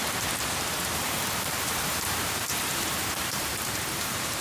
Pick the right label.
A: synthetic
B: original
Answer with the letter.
A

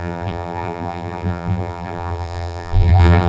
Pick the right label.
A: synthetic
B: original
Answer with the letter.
A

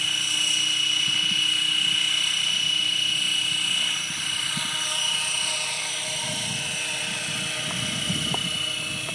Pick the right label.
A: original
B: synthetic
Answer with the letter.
A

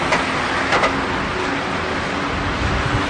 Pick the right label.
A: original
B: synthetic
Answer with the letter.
A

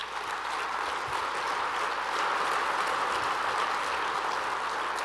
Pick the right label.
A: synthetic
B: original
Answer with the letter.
B